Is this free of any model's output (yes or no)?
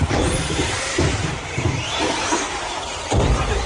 no